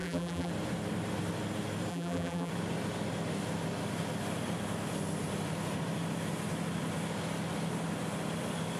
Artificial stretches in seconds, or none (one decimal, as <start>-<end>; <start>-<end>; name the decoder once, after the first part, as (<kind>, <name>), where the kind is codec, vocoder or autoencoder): 0.0-0.5 (vocoder, BigVGAN v2); 1.9-2.5